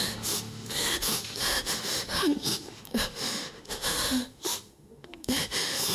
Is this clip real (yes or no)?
no